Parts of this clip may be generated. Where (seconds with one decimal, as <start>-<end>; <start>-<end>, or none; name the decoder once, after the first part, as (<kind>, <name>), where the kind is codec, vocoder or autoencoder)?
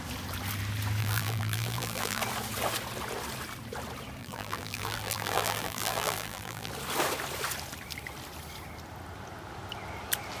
1.0-2.2 (vocoder, BigVGAN v2); 4.2-6.7